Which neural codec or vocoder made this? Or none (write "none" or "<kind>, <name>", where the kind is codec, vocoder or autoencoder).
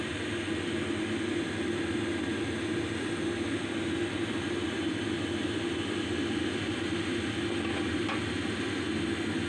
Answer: none